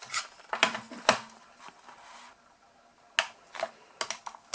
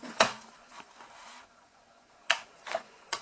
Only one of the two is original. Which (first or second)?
first